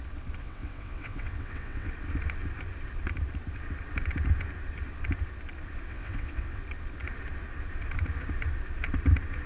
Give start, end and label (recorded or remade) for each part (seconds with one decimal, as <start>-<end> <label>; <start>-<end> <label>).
0.0-0.4 recorded; 0.4-1.9 remade; 1.9-5.9 recorded; 5.9-6.6 remade; 6.6-9.5 recorded